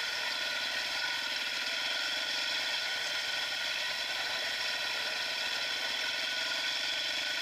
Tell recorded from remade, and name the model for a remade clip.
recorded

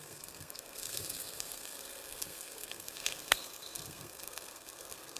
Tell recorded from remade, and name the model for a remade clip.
remade, codec, SNAC